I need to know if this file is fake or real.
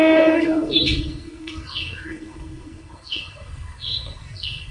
fake